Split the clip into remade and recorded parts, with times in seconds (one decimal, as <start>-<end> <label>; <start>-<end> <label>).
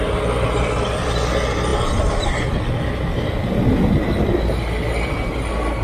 0.0-5.8 recorded